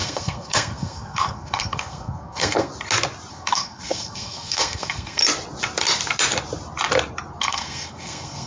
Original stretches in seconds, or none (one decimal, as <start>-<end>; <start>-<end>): 2.7-3.3; 5.2-7.4